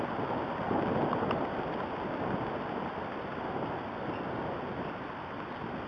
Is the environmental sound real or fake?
real